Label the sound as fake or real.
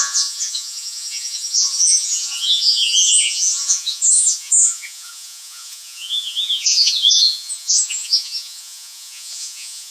fake